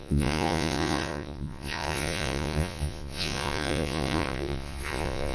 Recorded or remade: remade